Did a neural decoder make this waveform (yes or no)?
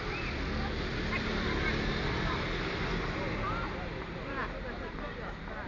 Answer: no